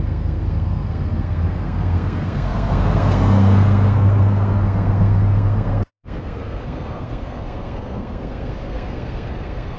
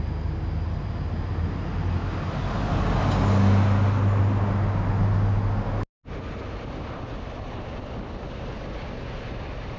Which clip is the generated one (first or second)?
first